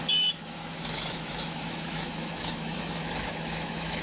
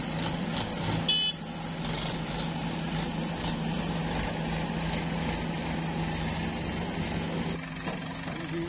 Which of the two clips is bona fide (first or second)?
second